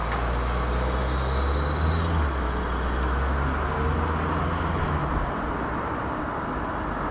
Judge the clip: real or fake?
real